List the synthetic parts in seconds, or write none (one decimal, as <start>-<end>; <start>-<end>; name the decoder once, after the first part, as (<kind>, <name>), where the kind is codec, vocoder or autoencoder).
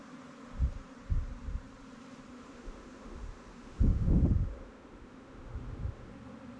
2.3-6.1 (autoencoder, DAC-VAE)